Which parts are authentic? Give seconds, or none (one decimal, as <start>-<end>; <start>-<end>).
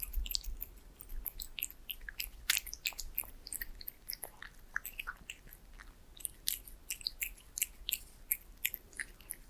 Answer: 0.0-9.5